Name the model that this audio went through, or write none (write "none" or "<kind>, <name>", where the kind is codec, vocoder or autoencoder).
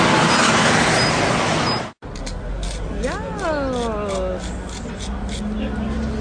none